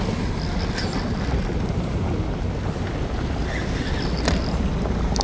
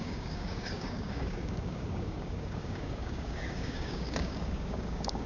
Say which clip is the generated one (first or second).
second